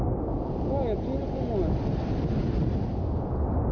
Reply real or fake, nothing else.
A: real